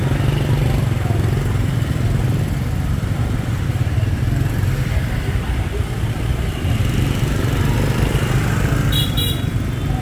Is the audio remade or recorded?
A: remade